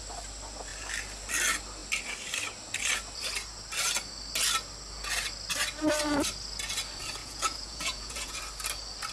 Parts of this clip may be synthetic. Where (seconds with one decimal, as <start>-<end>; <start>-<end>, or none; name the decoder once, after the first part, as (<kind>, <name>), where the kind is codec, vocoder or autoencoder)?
7.2-8.4 (vocoder, Vocos)